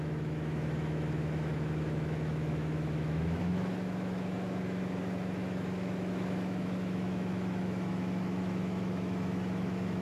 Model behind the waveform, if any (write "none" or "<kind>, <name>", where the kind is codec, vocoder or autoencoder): autoencoder, DAC-VAE